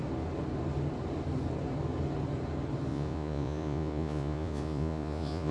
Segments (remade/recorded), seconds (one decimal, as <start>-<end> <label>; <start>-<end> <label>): 0.0-2.9 recorded; 2.9-5.5 remade